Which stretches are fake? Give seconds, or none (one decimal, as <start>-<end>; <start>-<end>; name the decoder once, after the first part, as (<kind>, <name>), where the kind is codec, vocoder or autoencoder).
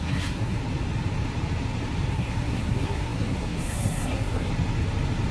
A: 0.0-0.6 (codec, SNAC); 2.1-4.5